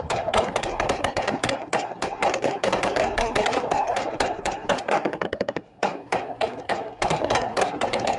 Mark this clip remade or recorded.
remade